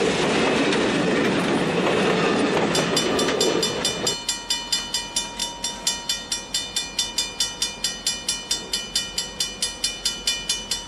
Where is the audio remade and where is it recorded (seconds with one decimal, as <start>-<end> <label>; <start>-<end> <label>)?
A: 0.0-10.9 recorded